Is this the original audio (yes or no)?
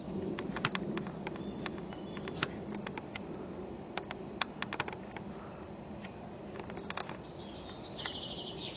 yes